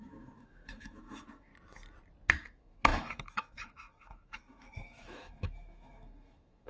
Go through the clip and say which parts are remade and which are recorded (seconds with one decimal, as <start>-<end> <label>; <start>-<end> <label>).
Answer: 0.0-1.5 remade; 1.5-2.3 recorded; 2.3-6.7 remade

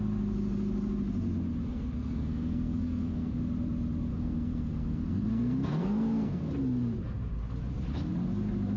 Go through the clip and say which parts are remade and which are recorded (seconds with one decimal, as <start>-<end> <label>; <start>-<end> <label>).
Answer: 0.0-1.6 recorded; 1.6-3.4 remade; 3.4-4.1 recorded; 4.1-6.4 remade; 6.4-8.8 recorded

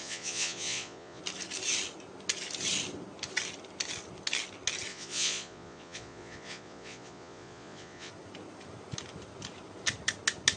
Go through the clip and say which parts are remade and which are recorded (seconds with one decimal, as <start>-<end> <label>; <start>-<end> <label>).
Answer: 0.0-1.2 remade; 1.2-4.9 recorded; 4.9-8.1 remade; 8.1-10.6 recorded